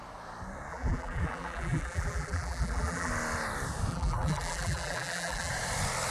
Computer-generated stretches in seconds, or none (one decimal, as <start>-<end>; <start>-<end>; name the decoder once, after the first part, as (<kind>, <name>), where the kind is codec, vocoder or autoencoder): 0.7-3.1 (vocoder, BigVGAN v2); 3.9-5.5